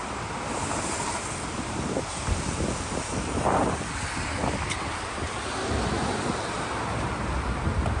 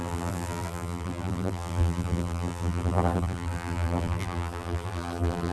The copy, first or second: second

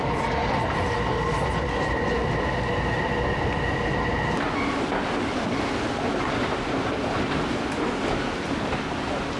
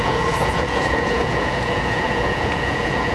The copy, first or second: second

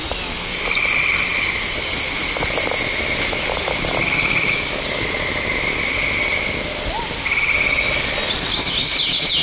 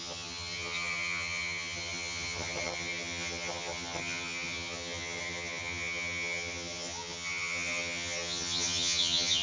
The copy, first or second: second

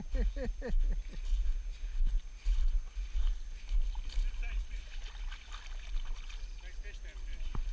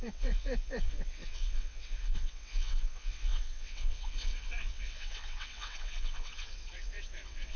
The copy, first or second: second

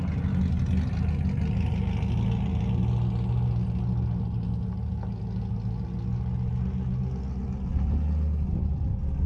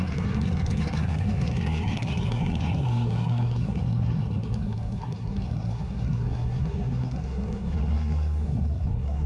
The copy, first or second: second